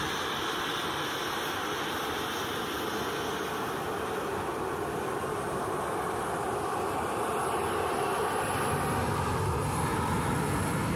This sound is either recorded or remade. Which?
recorded